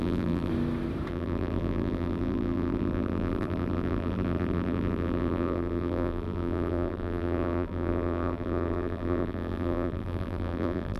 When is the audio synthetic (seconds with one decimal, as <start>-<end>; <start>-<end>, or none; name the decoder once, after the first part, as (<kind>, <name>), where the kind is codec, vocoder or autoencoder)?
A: 0.0-0.5 (vocoder, BigVGAN v2); 1.1-11.0

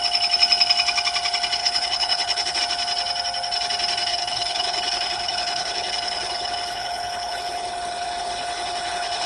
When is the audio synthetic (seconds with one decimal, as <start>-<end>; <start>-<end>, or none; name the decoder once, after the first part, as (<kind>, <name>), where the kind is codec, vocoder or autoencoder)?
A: 1.6-2.6 (codec, HILCodec); 4.1-9.3

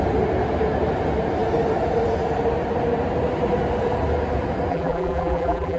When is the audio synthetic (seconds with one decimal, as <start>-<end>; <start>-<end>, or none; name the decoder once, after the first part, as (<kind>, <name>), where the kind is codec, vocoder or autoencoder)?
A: 4.7-5.8 (vocoder, BigVGAN v2)

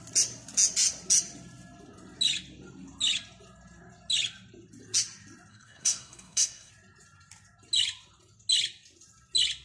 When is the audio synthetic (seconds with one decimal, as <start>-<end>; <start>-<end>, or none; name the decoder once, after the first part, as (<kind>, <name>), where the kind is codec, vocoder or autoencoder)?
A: 5.5-6.7 (codec, SNAC)

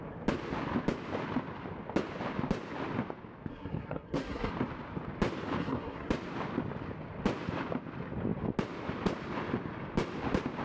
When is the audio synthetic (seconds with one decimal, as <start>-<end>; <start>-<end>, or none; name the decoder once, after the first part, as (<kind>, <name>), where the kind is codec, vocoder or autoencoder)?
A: 3.5-4.5 (codec, SNAC); 5.6-6.1

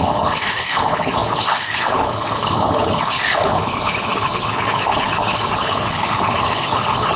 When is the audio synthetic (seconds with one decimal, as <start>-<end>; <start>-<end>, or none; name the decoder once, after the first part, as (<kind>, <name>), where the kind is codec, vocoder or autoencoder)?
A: 0.0-7.2 (codec, HILCodec)

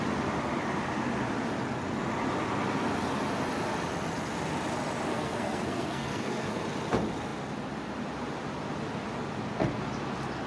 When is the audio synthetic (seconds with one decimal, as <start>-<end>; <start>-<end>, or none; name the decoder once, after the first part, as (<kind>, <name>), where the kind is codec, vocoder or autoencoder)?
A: 5.1-6.6 (codec, SNAC)

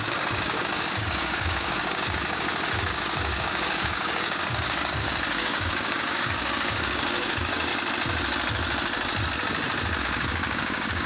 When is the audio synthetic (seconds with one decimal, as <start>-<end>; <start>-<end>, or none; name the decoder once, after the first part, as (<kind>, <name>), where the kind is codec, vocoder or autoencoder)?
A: 0.0-7.7 (codec, DAC); 10.0-11.1